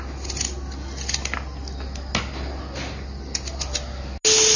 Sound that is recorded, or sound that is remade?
recorded